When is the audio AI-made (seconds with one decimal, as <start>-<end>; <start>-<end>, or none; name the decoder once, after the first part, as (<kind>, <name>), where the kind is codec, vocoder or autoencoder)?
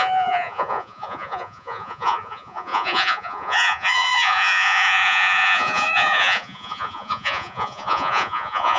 0.0-8.8 (vocoder, Vocos)